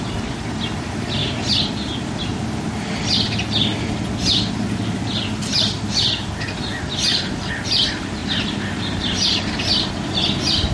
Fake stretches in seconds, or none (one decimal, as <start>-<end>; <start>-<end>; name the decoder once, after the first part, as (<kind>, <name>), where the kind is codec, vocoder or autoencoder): none